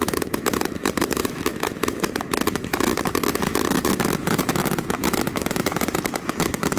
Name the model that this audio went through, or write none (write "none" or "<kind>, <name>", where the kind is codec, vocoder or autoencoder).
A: autoencoder, DAC-VAE